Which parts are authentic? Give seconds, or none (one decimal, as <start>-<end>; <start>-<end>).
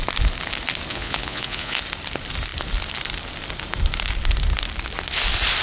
0.0-0.9; 1.8-5.6